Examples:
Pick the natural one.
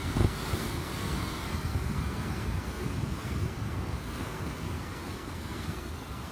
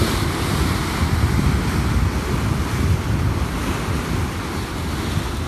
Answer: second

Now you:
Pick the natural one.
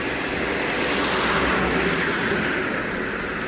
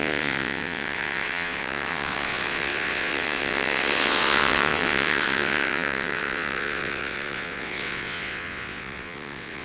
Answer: first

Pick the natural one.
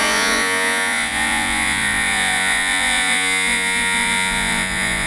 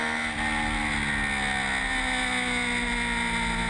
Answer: second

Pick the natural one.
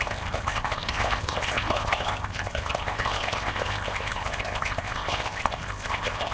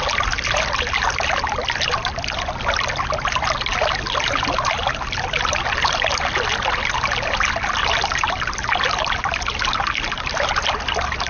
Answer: second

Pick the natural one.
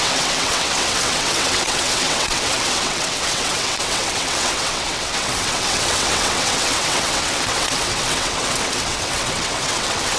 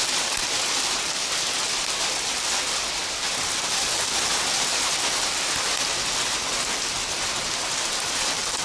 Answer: second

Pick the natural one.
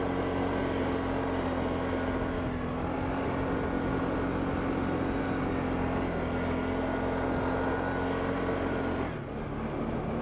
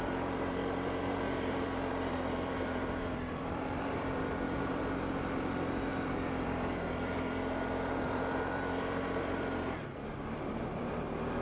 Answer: first